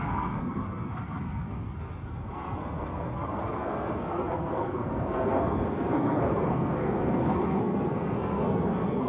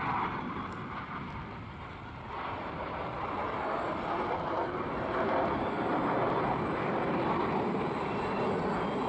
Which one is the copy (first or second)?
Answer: first